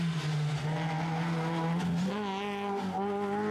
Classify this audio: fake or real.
real